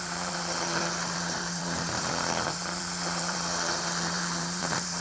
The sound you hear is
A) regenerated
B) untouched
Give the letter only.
A